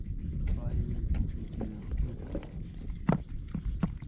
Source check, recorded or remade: recorded